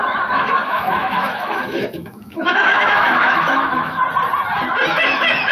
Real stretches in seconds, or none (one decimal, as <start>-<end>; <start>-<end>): 4.0-4.9

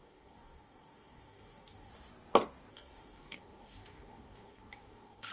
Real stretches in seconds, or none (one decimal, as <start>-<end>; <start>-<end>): 1.9-2.7

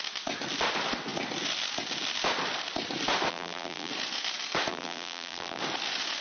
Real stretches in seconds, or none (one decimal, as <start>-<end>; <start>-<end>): 0.0-3.3; 3.9-4.7; 5.6-6.2

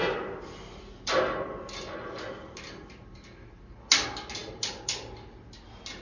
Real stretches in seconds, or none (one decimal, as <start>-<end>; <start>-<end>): 0.0-6.0

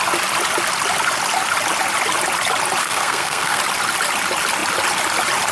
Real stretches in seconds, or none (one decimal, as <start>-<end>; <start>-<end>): 0.0-2.8; 3.6-5.5